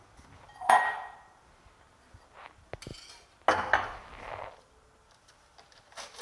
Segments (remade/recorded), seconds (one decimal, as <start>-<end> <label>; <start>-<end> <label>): 0.0-6.2 recorded